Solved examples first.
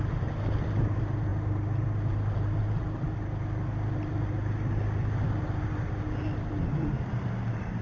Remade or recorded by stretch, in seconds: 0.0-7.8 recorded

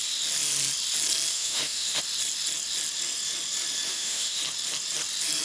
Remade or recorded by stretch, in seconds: 0.0-1.3 recorded; 1.3-2.0 remade; 2.0-3.9 recorded; 3.9-4.4 remade; 4.4-5.4 recorded

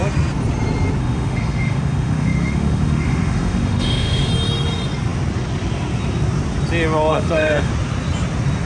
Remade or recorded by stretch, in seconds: 0.0-1.0 recorded; 1.0-4.3 remade; 4.3-7.1 recorded; 7.1-7.7 remade; 7.7-8.7 recorded

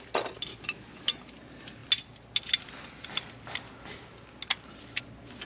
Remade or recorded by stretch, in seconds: 0.0-0.5 recorded; 0.5-1.2 remade; 1.2-5.4 recorded